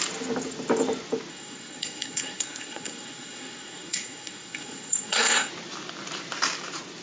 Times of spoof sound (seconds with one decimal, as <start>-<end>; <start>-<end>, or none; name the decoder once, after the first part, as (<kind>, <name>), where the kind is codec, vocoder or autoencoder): 1.3-5.5 (codec, SNAC)